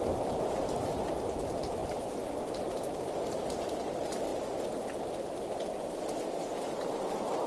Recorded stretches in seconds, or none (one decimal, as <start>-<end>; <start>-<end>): 0.0-7.5